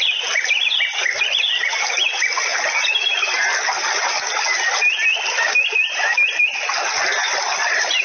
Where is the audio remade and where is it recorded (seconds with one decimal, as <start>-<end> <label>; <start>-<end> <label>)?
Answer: 0.0-8.0 recorded